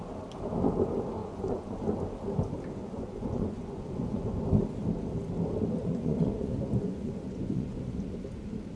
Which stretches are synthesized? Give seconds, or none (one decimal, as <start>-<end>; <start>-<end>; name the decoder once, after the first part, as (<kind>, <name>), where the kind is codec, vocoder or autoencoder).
1.2-1.8 (vocoder, Vocos); 2.8-4.4; 5.8-7.8